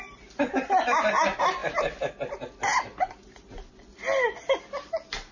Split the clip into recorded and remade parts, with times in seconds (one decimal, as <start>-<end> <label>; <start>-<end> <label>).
0.0-5.3 recorded